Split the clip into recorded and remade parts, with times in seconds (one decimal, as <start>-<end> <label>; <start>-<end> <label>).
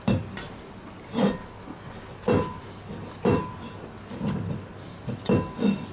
0.0-5.9 recorded